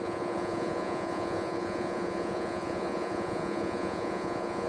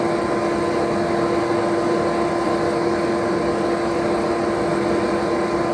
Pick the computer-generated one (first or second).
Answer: first